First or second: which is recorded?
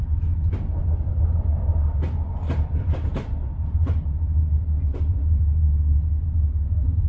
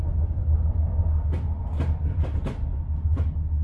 second